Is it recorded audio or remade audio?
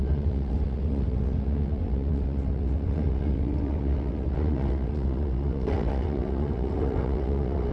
remade